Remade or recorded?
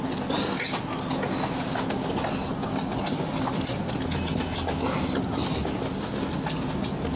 recorded